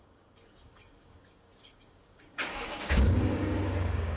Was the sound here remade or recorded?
remade